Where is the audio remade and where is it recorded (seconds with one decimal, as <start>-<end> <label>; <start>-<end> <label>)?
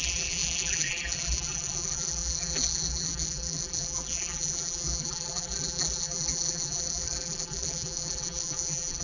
0.0-9.0 remade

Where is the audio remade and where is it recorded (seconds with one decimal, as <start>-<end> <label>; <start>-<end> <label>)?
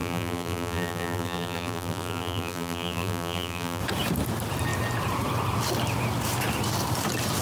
0.0-3.8 remade; 3.8-7.4 recorded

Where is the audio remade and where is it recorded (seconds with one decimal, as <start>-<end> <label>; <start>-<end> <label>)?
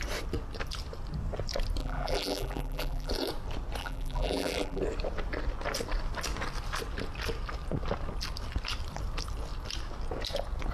0.0-1.8 recorded; 1.8-3.1 remade; 3.1-3.8 recorded; 3.8-4.8 remade; 4.8-10.7 recorded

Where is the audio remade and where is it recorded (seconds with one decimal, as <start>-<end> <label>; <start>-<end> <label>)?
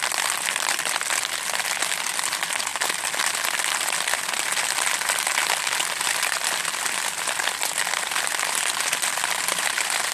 0.0-10.1 recorded